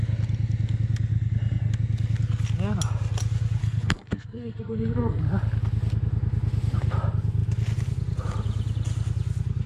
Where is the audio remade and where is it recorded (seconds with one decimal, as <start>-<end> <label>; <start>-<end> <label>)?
0.0-1.1 recorded; 1.1-1.7 remade; 1.7-3.6 recorded; 3.6-5.2 remade; 5.2-9.7 recorded